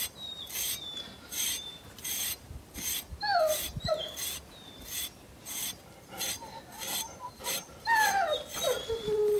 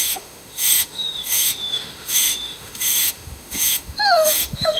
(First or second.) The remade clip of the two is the second